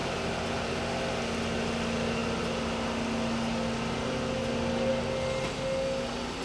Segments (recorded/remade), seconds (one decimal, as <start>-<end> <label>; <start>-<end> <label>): 0.0-6.4 recorded